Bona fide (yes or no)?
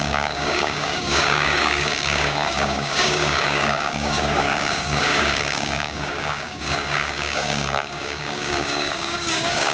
no